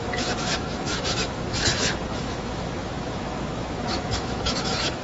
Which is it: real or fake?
fake